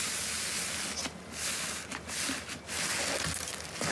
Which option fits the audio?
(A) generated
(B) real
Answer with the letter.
B